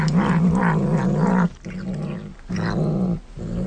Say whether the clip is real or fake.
real